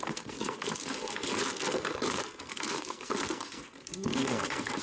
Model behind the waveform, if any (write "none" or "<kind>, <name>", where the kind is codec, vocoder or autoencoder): codec, SNAC